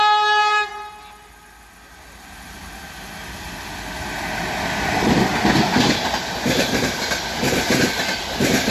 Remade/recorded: recorded